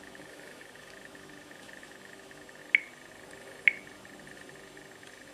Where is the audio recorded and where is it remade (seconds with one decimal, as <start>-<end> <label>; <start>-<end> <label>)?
0.0-2.6 remade; 2.6-5.3 recorded